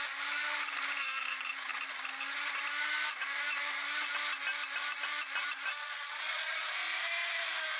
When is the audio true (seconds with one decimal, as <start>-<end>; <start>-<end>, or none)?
0.0-5.8; 6.7-7.8